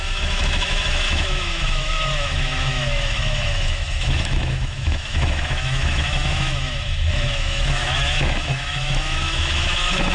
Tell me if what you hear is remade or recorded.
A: remade